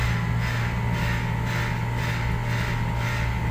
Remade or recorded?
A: recorded